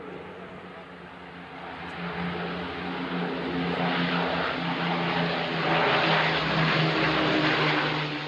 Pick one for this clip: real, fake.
real